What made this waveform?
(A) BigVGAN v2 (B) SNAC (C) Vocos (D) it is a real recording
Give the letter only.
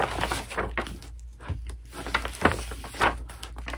D